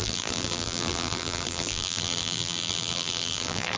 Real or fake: fake